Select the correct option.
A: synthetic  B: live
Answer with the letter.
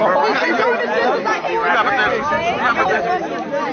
B